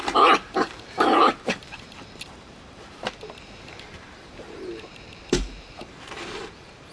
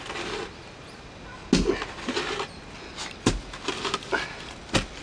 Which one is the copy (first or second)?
first